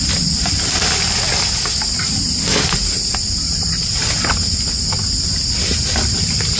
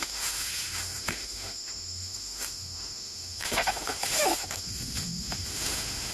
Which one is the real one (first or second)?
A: first